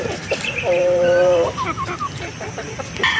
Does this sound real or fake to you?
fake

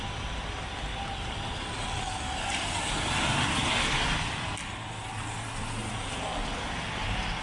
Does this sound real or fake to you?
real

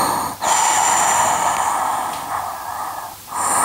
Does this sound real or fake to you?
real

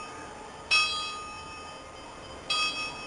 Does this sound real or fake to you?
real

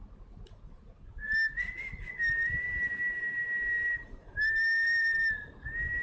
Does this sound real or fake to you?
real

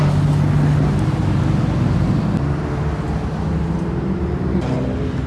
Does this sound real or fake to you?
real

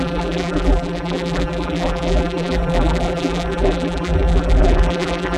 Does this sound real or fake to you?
fake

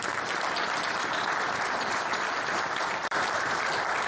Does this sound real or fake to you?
fake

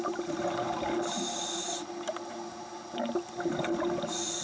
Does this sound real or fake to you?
real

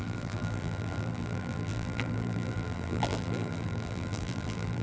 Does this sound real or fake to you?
fake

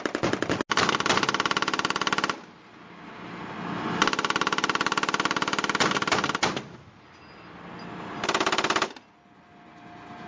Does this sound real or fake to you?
real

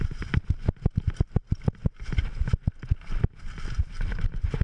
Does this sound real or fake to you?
real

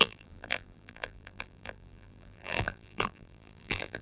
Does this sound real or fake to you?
fake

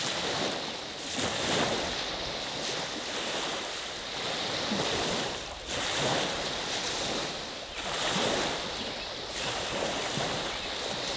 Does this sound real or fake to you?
real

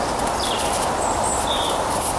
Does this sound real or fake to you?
real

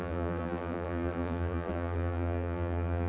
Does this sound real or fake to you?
fake